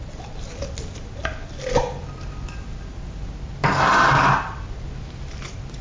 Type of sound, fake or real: real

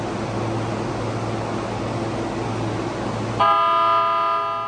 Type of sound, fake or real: real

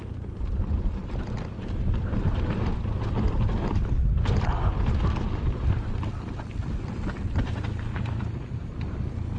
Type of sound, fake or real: fake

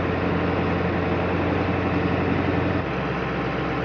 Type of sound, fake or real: real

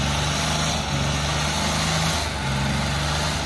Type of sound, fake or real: real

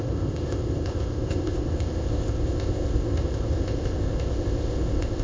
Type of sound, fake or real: fake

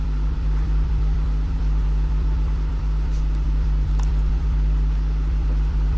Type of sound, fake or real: fake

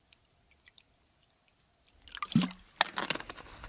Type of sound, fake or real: real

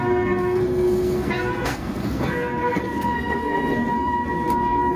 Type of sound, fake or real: fake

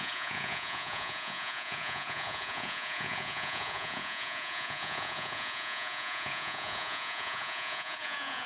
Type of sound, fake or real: fake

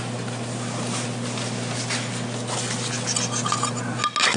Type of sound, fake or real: real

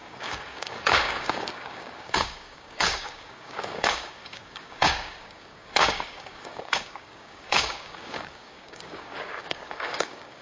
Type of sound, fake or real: fake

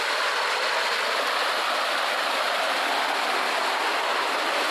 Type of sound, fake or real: real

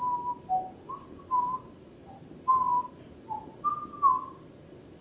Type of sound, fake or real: real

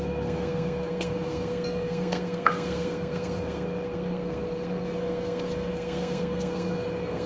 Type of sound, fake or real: fake